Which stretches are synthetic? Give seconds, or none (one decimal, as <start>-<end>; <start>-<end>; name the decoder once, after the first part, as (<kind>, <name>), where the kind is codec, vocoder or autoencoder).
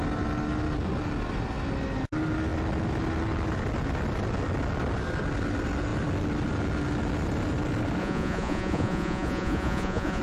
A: 8.0-10.2 (vocoder, Vocos)